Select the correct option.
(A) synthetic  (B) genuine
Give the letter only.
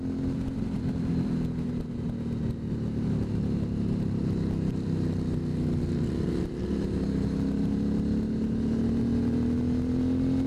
B